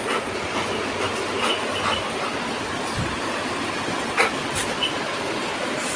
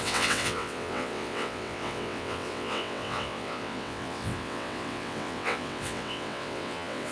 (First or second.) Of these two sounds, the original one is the first